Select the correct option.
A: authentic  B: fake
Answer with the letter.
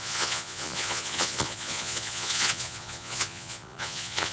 B